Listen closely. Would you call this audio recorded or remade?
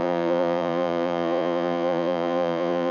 remade